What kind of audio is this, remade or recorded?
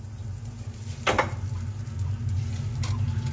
recorded